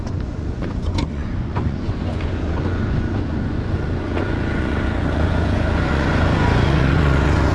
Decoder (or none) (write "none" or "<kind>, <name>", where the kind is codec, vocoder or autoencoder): vocoder, Vocos